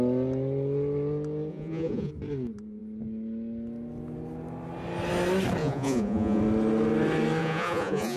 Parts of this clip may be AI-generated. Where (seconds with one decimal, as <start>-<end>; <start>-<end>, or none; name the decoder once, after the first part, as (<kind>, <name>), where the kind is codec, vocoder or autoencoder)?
1.5-2.1 (vocoder, Vocos); 5.6-6.4; 7.4-8.2